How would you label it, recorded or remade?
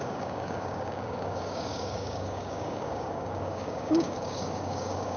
remade